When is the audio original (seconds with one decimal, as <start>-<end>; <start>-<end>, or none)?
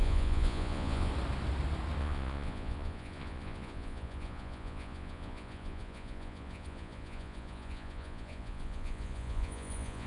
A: 1.1-2.0